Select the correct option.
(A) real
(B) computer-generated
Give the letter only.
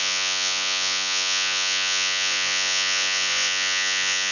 B